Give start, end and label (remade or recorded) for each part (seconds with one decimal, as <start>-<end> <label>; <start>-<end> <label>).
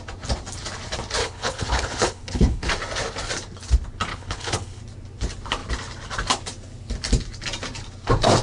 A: 0.0-1.2 recorded; 1.2-2.7 remade; 2.7-4.1 recorded; 4.1-4.8 remade; 4.8-8.4 recorded